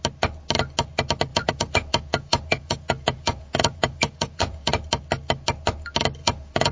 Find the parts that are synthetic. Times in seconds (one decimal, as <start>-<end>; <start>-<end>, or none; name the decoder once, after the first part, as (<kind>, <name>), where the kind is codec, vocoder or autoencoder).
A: 1.3-4.7 (vocoder, Vocos); 6.2-6.7